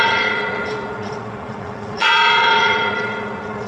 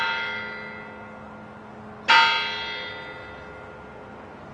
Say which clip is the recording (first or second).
second